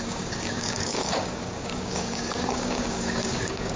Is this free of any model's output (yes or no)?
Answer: no